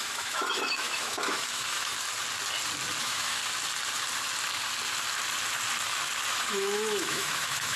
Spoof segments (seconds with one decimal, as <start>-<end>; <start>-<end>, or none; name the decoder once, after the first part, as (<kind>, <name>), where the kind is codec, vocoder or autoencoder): 0.0-1.9 (autoencoder, DAC-VAE); 3.0-3.4; 6.3-7.8